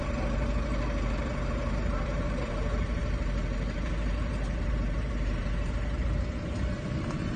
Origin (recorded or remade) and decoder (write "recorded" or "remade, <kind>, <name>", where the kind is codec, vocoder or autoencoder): remade, vocoder, BigVGAN v2